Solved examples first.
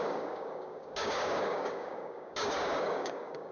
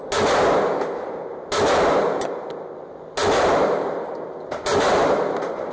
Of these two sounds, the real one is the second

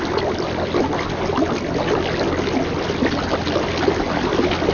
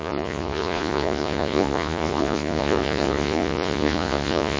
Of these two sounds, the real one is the first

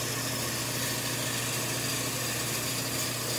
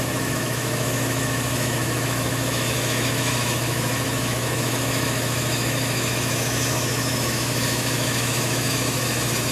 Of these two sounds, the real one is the first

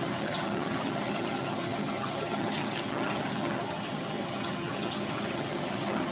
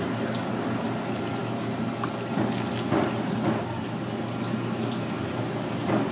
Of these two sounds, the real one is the second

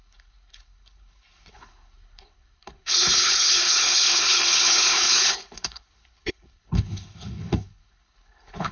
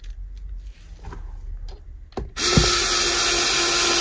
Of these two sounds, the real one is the second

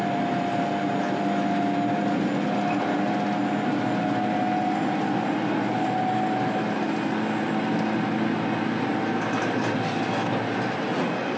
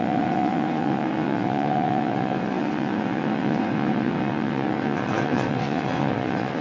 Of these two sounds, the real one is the first